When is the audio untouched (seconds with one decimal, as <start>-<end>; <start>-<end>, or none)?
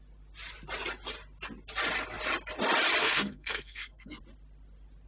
0.0-3.0; 4.2-5.1